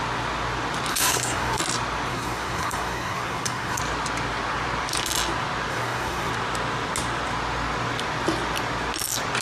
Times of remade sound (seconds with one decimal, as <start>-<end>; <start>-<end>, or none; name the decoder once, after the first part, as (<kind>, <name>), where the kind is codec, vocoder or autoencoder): 0.9-1.6 (codec, SNAC); 2.1-3.8; 5.7-6.3

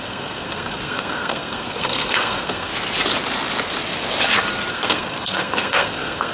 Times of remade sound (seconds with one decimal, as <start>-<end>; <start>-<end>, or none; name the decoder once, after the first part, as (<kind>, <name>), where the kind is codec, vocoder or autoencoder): 0.0-2.7 (codec, SNAC); 4.7-6.3

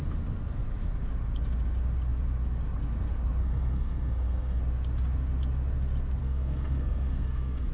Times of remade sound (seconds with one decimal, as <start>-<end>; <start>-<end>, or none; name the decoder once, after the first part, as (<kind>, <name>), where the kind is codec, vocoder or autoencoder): 3.4-4.6 (codec, SNAC); 6.2-7.7

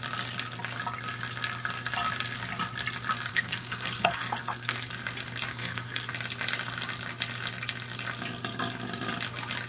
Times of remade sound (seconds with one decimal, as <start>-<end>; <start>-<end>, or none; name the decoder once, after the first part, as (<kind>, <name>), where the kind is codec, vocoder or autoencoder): 3.3-4.9 (codec, SNAC); 5.5-6.1

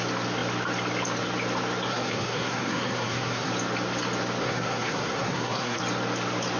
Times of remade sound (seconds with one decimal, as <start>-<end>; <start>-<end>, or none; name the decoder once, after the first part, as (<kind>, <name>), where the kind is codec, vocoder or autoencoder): 1.9-3.5 (codec, SNAC); 4.4-5.8

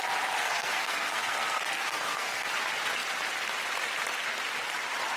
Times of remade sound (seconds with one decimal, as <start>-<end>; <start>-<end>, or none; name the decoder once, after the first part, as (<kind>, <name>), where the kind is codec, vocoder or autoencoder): 0.4-2.5 (codec, SNAC)

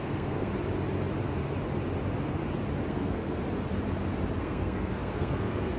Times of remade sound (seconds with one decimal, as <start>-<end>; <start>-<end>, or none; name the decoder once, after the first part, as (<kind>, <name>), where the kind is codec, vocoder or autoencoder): 0.0-0.5 (codec, SNAC); 2.9-3.4; 4.4-5.8